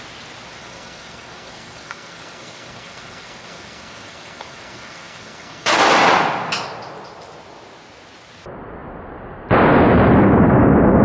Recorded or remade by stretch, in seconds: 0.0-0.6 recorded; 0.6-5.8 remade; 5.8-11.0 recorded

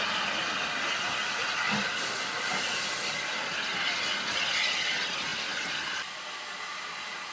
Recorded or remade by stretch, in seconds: 0.0-7.3 recorded